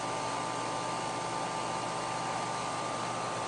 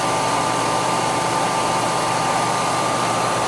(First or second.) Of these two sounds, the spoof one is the second